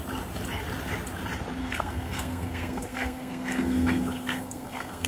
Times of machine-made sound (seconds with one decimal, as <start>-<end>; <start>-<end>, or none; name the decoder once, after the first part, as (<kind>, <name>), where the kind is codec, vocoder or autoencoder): 1.6-5.1 (codec, SNAC)